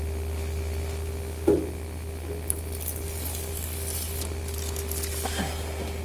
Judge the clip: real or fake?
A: real